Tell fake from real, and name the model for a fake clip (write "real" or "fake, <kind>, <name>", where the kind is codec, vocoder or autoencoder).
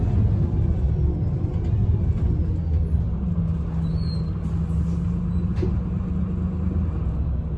real